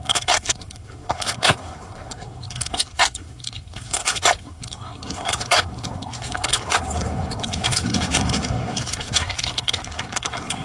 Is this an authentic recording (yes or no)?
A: no